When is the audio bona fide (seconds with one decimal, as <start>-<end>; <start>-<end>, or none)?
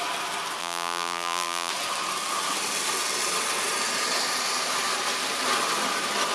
0.0-0.6; 1.7-6.3